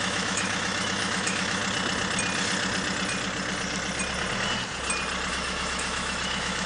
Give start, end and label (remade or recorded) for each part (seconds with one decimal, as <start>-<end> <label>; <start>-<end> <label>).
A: 0.0-1.6 remade; 1.6-5.3 recorded; 5.3-6.7 remade